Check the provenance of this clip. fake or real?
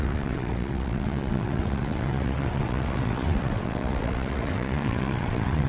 fake